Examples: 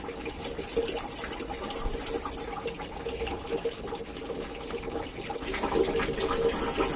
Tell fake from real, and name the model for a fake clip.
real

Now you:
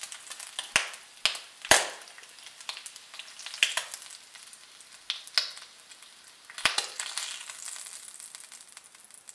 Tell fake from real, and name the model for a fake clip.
real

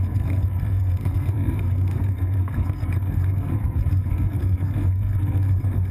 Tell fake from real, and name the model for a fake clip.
fake, codec, SNAC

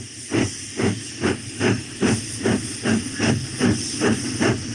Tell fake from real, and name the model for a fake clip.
real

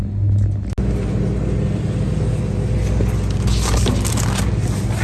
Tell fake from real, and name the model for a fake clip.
real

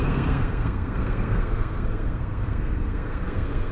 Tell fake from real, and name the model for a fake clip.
fake, codec, SNAC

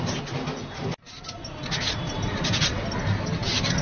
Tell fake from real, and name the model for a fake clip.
real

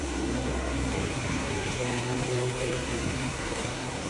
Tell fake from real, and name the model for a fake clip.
fake, codec, SNAC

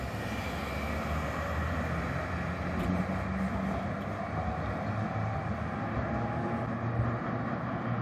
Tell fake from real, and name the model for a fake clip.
real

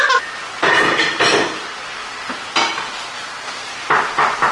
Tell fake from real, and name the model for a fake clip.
real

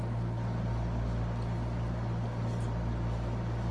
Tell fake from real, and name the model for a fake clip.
real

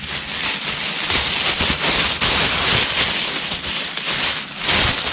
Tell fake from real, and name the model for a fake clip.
real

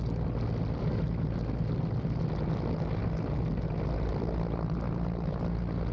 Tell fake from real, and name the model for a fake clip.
real